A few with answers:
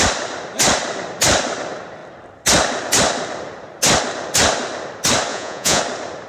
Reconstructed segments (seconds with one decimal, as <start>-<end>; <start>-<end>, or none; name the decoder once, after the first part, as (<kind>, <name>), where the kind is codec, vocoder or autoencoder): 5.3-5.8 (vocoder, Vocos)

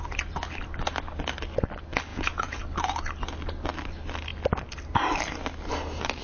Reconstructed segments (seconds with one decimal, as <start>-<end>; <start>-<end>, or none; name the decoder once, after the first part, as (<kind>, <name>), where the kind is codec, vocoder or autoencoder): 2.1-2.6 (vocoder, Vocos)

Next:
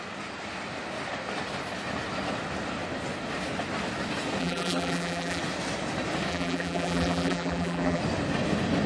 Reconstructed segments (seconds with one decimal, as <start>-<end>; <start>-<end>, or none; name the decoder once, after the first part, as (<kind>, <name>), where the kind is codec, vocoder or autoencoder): 4.4-5.4 (vocoder, BigVGAN v2); 6.3-8.0

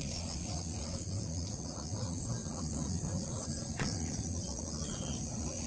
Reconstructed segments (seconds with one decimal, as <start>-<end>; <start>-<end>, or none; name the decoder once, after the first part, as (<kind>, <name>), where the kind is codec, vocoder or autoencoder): 0.0-5.7 (vocoder, Vocos)